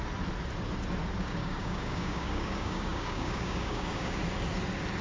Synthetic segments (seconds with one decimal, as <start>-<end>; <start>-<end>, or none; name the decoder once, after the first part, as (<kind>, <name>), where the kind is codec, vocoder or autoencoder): 1.2-4.2 (codec, DAC)